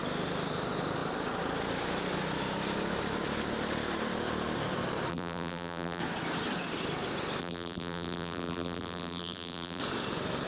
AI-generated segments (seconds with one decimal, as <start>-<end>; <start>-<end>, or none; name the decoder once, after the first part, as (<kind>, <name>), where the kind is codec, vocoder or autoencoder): 5.1-6.0 (vocoder, BigVGAN v2); 7.4-9.8